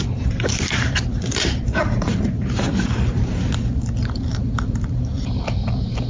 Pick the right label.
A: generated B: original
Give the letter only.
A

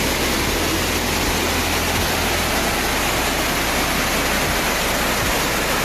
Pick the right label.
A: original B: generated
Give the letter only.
A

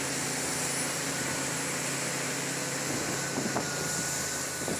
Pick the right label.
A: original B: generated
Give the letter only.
A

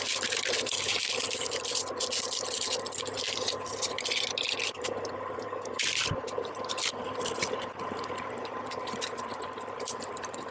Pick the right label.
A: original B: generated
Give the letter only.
B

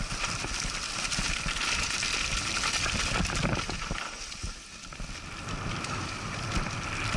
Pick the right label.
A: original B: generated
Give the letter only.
A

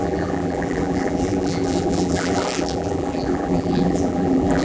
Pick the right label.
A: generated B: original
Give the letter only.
A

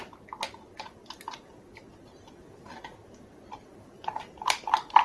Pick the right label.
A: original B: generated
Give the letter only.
A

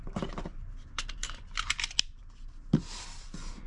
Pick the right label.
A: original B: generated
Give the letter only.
B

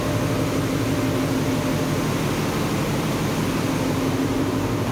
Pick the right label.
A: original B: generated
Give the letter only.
A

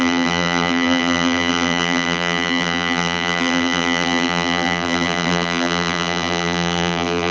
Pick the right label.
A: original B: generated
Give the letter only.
B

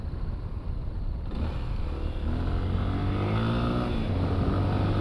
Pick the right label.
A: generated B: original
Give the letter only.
B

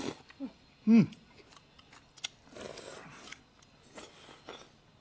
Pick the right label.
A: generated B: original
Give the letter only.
B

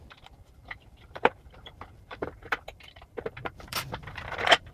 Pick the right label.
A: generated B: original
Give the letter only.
A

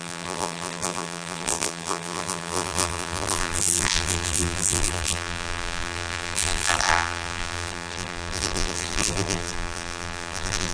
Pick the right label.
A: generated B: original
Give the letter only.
A